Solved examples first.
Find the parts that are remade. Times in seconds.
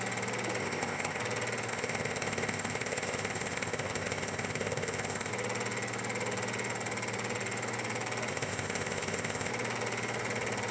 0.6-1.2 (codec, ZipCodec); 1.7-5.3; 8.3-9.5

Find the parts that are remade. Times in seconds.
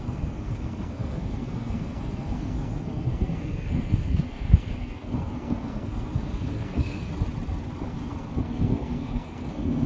0.0-7.1 (codec, SNAC); 7.8-9.9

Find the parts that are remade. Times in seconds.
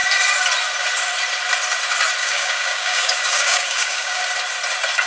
2.2-4.2 (codec, DAC)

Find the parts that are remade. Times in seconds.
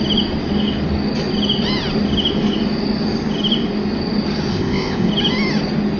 4.5-5.1 (codec, ZipCodec)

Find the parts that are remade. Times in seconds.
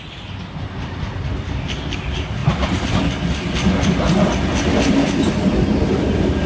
none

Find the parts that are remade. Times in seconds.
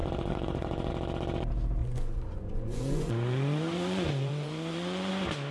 0.0-0.9 (vocoder, Vocos); 1.8-5.1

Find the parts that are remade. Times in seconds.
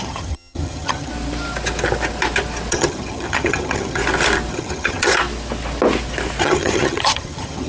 0.0-1.1 (vocoder, HiFi-GAN); 2.7-4.0; 4.5-5.1; 6.4-7.7